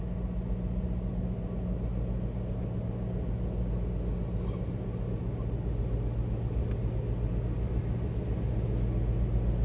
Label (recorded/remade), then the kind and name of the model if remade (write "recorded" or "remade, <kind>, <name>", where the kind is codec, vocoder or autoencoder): recorded